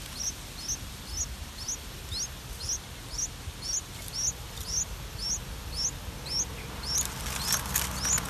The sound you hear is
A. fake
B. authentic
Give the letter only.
B